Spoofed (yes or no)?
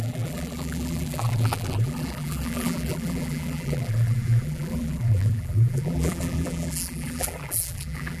yes